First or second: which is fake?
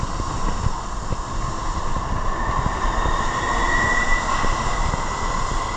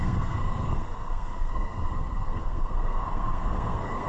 second